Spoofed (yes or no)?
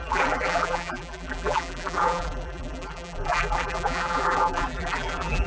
yes